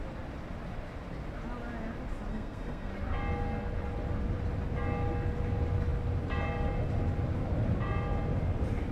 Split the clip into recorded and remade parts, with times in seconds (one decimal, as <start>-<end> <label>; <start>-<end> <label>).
0.0-2.3 recorded; 2.3-2.9 remade; 2.9-8.9 recorded